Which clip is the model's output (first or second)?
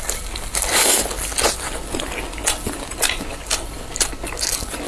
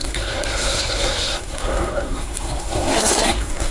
second